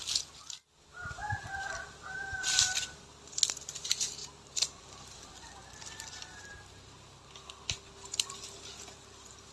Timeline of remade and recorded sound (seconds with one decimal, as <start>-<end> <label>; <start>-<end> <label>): 0.0-1.2 recorded; 1.2-3.4 remade; 3.4-4.2 recorded; 4.2-6.5 remade; 6.5-9.5 recorded